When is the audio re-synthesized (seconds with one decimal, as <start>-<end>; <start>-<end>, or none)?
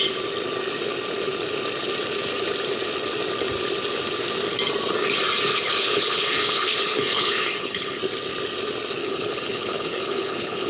5.5-8.0; 9.0-10.7